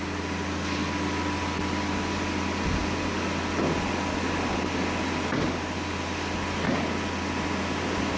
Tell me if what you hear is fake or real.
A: real